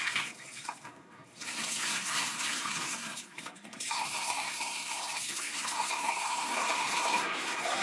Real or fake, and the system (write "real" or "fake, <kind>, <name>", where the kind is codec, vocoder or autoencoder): fake, codec, SNAC